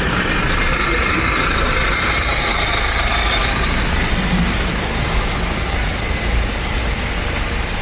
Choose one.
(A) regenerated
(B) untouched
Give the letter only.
A